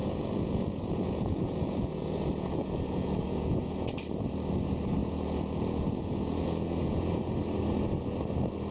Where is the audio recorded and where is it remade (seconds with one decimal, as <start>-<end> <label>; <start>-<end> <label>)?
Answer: 0.0-3.9 remade; 3.9-5.0 recorded; 5.0-7.2 remade; 7.2-8.7 recorded